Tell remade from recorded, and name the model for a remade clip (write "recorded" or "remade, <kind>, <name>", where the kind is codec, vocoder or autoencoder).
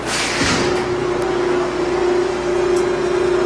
recorded